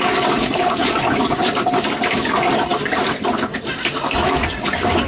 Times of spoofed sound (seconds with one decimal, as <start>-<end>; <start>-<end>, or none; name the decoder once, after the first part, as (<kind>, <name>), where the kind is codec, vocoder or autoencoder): 0.8-1.5 (vocoder, Vocos)